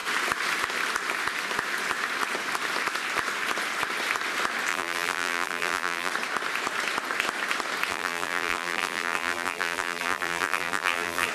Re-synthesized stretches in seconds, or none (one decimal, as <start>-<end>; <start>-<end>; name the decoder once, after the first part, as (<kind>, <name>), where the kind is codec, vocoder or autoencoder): 4.7-6.1 (vocoder, BigVGAN v2); 7.9-11.3